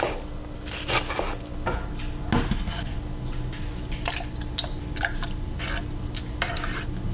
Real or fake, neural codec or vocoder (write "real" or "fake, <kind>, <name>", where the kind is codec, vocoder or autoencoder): real